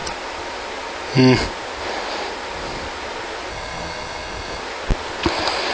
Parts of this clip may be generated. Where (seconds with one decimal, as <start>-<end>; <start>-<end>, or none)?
3.5-4.6